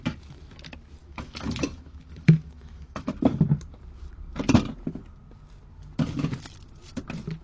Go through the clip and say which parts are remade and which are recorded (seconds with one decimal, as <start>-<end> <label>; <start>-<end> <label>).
0.0-1.0 recorded; 1.0-3.1 remade; 3.1-7.4 recorded